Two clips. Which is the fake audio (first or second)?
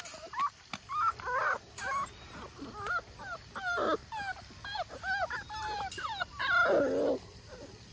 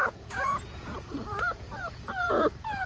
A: second